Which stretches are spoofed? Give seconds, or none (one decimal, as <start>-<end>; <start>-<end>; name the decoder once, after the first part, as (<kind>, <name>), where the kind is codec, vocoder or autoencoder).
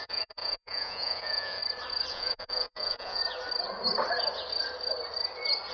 0.0-1.6 (vocoder, Vocos); 2.1-3.2